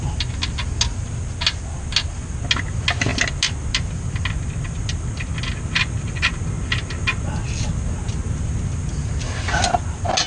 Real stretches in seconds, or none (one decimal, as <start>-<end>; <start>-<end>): 0.0-10.3